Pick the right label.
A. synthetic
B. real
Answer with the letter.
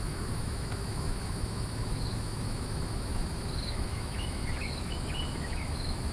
A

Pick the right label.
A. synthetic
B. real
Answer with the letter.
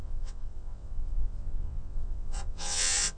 A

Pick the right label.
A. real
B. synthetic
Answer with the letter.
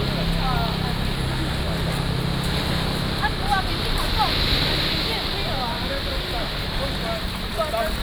A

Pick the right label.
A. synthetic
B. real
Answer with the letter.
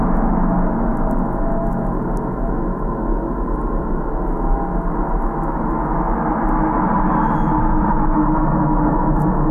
B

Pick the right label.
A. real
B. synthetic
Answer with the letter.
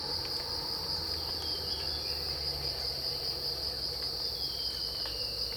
A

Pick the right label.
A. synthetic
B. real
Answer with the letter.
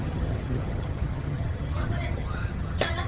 A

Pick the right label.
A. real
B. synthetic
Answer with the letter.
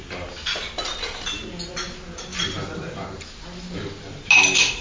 A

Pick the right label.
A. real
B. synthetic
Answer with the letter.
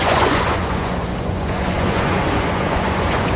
B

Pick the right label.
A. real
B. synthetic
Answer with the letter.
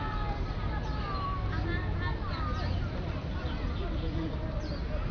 A